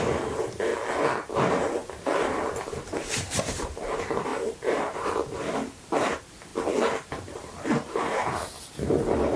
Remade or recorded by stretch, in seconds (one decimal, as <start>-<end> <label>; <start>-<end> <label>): 0.0-0.7 remade; 0.7-1.3 recorded; 1.3-6.5 remade; 6.5-7.1 recorded; 7.1-9.4 remade